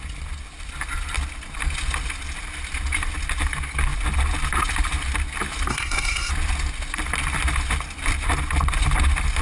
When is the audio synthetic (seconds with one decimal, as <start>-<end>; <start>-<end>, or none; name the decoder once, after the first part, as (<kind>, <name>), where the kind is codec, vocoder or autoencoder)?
5.7-6.3 (codec, SNAC)